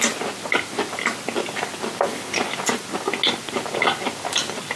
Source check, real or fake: real